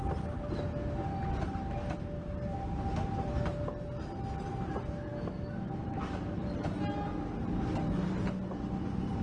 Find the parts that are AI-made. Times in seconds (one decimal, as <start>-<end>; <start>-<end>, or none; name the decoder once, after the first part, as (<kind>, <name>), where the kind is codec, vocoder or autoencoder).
5.1-6.0 (autoencoder, DAC-VAE)